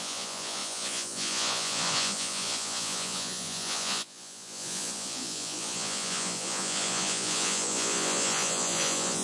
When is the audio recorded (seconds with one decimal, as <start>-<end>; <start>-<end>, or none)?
none